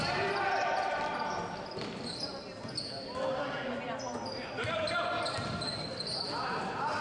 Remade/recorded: recorded